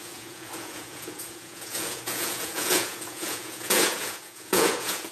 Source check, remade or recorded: remade